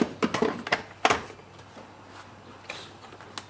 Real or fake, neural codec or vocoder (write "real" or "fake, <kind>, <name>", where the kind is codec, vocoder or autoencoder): real